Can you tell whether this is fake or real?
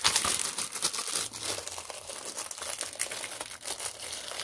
real